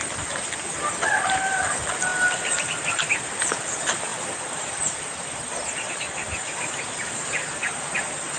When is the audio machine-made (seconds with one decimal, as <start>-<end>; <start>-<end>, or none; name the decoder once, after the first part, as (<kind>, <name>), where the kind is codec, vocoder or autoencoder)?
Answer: 2.1-3.1 (vocoder, BigVGAN v2); 4.1-7.6